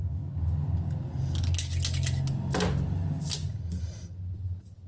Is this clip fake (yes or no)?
no